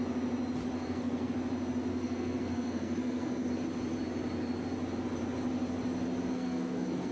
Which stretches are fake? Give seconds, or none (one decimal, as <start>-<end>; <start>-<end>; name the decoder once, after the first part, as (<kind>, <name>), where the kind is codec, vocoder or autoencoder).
0.7-1.3 (codec, SNAC); 1.9-3.5; 6.3-7.1